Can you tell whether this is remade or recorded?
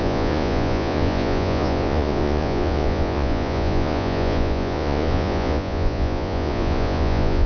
remade